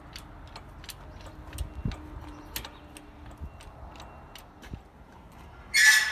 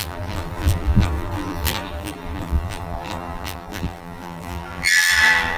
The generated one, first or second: second